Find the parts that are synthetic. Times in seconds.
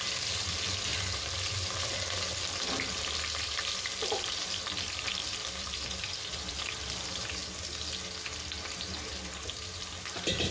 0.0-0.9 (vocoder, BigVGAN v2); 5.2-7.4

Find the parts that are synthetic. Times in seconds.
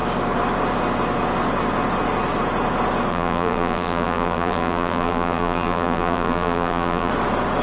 3.1-7.1 (vocoder, BigVGAN v2)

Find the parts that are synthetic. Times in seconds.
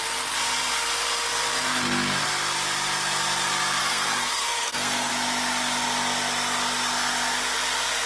3.8-5.1 (codec, SNAC)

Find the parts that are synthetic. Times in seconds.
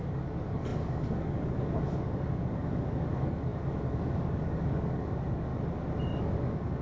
0.0-5.5 (codec, DAC); 6.0-6.8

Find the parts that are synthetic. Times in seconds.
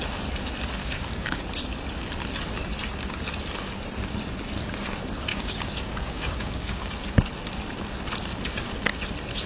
0.8-1.4 (codec, DAC); 5.3-6.9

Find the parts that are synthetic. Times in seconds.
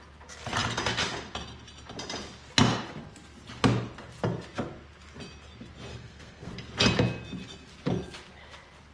5.9-6.5 (codec, SNAC)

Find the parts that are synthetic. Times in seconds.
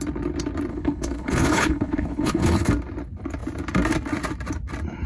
0.7-2.7 (codec, HILCodec)